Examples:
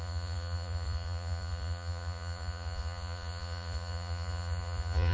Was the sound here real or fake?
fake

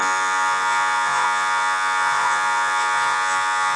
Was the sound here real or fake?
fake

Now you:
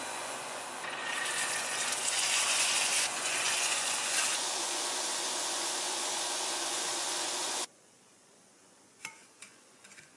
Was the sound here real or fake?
fake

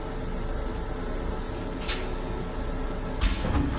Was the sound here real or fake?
real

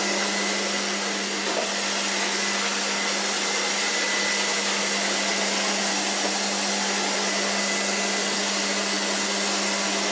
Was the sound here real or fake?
real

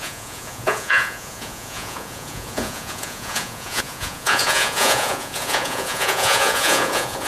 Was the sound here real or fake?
fake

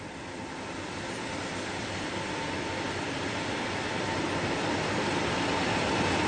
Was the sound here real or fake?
real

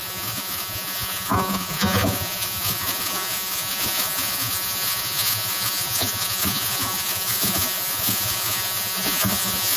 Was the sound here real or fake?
fake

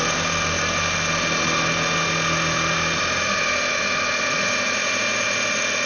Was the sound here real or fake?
real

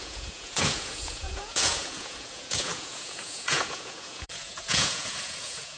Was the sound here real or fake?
fake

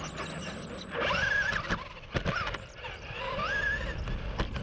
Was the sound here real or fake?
real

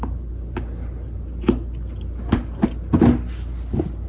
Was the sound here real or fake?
real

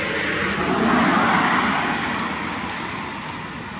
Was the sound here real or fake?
real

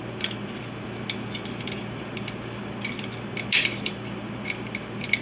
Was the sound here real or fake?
real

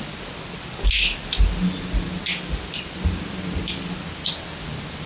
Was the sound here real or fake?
real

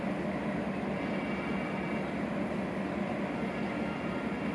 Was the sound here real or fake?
real